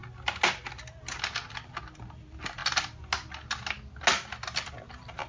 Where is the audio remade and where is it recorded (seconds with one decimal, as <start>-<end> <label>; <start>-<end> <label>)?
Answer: 0.0-5.3 recorded

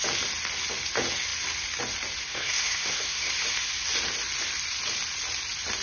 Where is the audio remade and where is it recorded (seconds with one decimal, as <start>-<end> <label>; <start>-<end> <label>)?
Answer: 0.0-2.2 recorded; 2.2-3.3 remade; 3.3-5.8 recorded

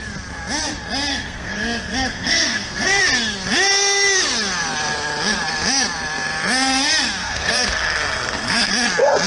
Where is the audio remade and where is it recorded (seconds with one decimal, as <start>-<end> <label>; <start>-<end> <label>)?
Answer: 0.0-1.1 recorded; 1.1-3.0 remade; 3.0-7.2 recorded; 7.2-8.7 remade; 8.7-9.3 recorded

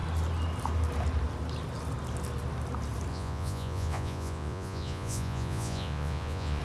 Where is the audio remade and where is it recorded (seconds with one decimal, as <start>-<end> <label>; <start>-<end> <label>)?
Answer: 0.0-3.1 recorded; 3.1-6.6 remade

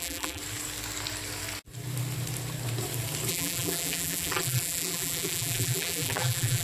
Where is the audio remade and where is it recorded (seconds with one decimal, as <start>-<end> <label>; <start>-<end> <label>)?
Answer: 0.0-0.4 remade; 0.4-3.3 recorded; 3.3-6.6 remade

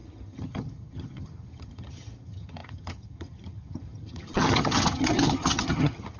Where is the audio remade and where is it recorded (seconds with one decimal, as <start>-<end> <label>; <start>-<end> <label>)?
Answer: 0.0-6.2 remade

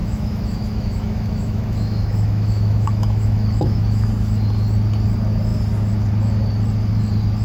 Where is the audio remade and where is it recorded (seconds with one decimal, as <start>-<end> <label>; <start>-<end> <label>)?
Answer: 0.0-4.1 remade; 4.1-7.4 recorded

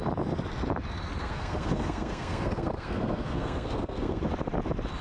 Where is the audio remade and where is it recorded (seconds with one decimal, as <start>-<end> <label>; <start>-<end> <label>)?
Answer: 0.0-1.2 recorded; 1.2-4.2 remade; 4.2-5.0 recorded